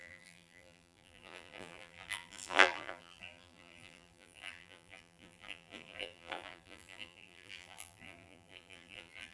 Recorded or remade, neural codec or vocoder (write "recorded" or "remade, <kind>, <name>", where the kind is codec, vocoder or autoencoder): remade, vocoder, BigVGAN v2